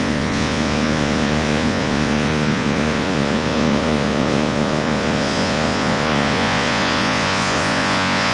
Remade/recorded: remade